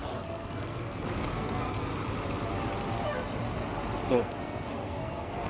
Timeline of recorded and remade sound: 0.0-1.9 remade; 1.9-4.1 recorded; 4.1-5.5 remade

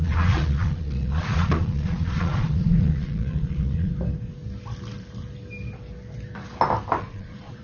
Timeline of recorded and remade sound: 0.0-3.9 remade; 3.9-7.0 recorded; 7.0-7.6 remade

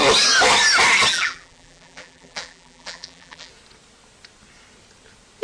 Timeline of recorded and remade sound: 0.0-1.1 recorded; 1.1-3.5 remade; 3.5-5.4 recorded

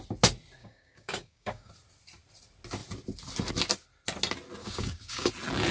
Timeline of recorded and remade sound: 0.0-0.6 recorded; 0.6-1.7 remade; 1.7-4.6 recorded; 4.6-5.3 remade; 5.3-5.7 recorded

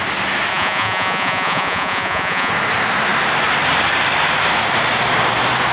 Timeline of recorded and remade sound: 0.0-0.5 recorded; 0.5-2.5 remade; 2.5-5.7 recorded

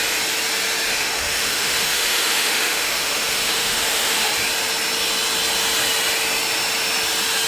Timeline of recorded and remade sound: 0.0-0.9 recorded; 0.9-4.3 remade; 4.3-7.5 recorded

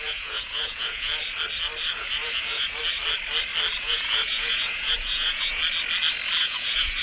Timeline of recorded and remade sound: 0.0-1.1 remade; 1.1-1.9 recorded; 1.9-2.8 remade; 2.8-3.8 recorded; 3.8-5.6 remade; 5.6-6.4 recorded; 6.4-7.0 remade